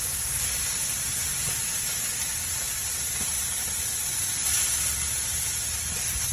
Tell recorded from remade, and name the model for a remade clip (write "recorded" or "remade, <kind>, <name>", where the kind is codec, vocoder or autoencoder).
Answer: recorded